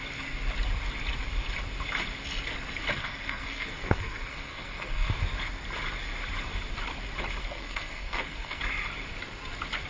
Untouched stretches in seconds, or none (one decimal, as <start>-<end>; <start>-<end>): 0.0-3.0; 5.1-7.4; 8.6-9.9